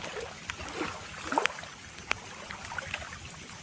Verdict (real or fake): real